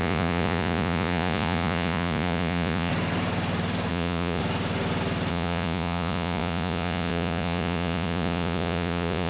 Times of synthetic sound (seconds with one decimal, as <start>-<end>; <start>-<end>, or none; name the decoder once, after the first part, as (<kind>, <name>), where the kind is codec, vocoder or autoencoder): 0.0-2.9 (vocoder, Vocos); 3.9-4.4; 5.3-9.3